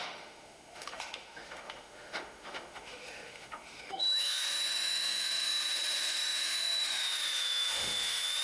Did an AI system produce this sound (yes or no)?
yes